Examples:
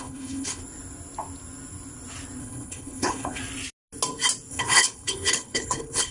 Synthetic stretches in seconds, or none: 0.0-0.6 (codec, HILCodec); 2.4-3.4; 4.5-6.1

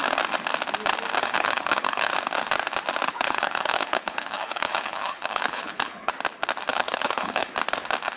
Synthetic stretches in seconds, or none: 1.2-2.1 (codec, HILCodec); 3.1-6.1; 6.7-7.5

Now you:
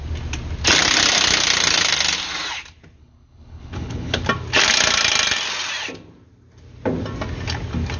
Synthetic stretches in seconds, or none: 3.0-4.2 (codec, HILCodec)

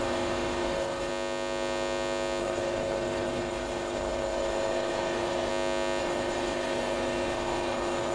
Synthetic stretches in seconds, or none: 0.0-1.1 (codec, HILCodec); 2.4-5.5; 6.0-8.1

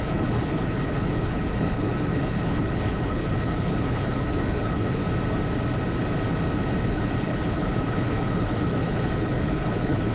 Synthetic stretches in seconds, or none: 0.0-5.0 (codec, HILCodec); 6.8-10.1

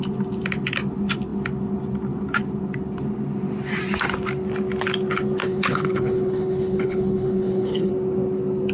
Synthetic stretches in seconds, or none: 5.4-7.9 (codec, HILCodec)

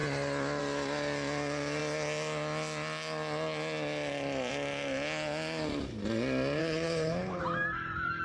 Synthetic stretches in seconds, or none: 6.6-7.4 (codec, HILCodec)

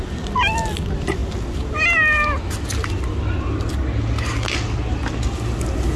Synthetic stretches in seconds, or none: none